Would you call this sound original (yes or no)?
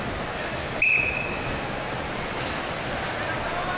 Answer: yes